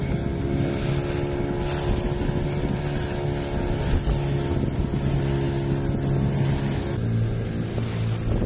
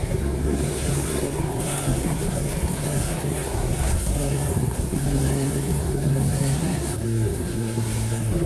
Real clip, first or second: first